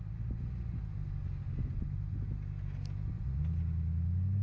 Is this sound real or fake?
real